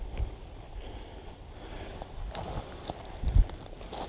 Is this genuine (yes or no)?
no